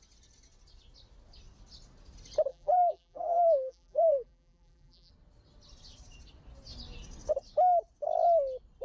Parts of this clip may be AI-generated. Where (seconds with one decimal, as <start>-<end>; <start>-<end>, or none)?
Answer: 2.5-5.1